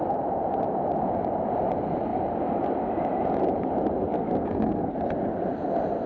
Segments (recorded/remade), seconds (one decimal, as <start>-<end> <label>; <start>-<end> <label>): 0.0-4.2 recorded; 4.2-4.9 remade; 4.9-6.1 recorded